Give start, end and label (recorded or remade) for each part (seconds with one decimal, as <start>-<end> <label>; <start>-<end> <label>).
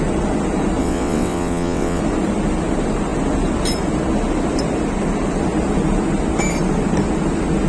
0.0-0.8 recorded; 0.8-2.0 remade; 2.0-7.7 recorded